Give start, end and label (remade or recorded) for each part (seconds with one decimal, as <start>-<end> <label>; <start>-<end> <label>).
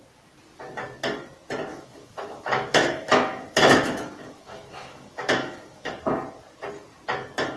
0.0-1.7 recorded; 1.7-5.9 remade; 5.9-7.6 recorded